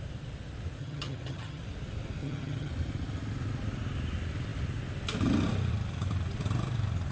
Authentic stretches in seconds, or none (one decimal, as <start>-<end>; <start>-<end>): 0.0-0.8; 1.6-2.2; 2.7-7.1

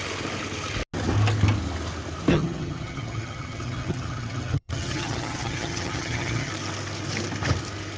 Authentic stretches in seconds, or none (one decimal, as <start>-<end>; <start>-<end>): 0.0-2.3; 6.5-8.0

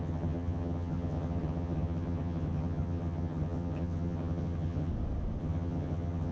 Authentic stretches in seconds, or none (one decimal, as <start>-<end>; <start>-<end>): 4.9-5.4

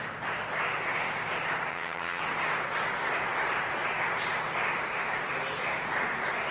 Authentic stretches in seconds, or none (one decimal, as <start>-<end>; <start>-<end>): 0.0-1.7; 2.2-6.5

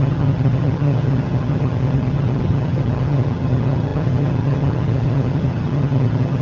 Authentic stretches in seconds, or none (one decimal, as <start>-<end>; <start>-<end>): none

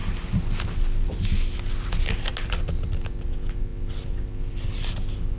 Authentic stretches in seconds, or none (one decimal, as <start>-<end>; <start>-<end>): 0.0-5.4

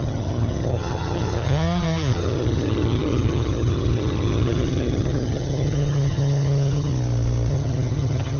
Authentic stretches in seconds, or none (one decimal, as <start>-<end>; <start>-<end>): 6.9-7.5